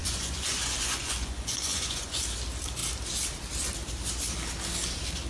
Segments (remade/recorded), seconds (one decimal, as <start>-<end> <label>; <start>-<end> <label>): 0.0-2.2 remade; 2.2-5.3 recorded